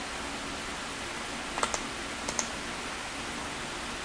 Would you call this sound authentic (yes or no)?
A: yes